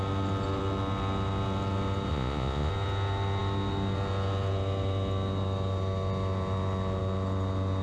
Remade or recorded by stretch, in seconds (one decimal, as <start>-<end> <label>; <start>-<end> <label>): 0.0-2.1 recorded; 2.1-2.7 remade; 2.7-7.8 recorded